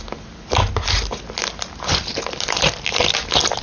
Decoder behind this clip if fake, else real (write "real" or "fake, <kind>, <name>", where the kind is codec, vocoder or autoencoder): real